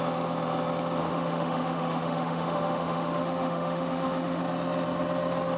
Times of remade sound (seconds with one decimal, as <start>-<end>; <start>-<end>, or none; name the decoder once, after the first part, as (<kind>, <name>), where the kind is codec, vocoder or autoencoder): 1.0-4.4 (autoencoder, DAC-VAE)